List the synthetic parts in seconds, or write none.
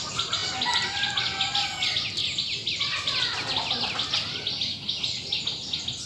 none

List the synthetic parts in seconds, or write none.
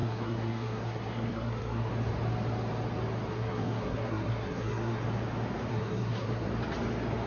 0.0-1.9 (codec, SNAC); 3.3-5.0; 5.7-6.5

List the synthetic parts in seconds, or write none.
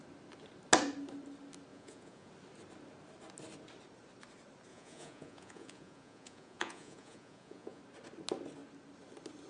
1.7-2.3 (vocoder, Vocos); 4.7-7.8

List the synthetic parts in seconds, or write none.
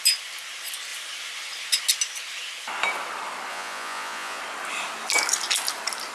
3.5-4.4 (vocoder, Vocos)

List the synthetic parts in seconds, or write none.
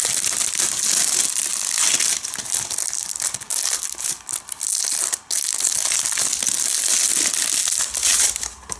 8.0-8.8 (vocoder, BigVGAN v2)